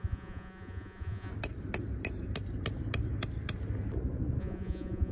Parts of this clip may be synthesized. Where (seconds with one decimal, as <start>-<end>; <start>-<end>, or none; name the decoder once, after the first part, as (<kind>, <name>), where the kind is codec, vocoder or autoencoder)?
0.0-1.3 (vocoder, Vocos); 4.4-5.1